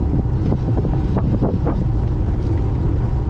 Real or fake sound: real